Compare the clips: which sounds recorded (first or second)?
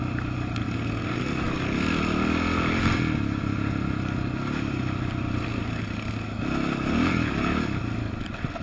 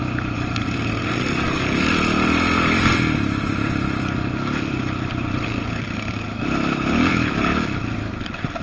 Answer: first